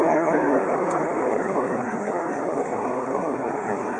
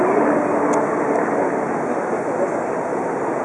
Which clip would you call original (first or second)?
second